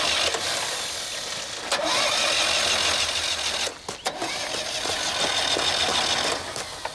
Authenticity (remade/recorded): recorded